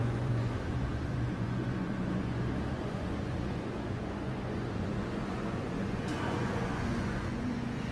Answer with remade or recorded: remade